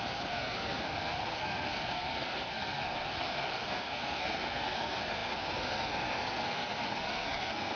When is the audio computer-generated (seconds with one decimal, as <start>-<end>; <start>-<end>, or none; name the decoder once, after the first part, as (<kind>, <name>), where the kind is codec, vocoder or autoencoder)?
0.0-7.8 (codec, SNAC)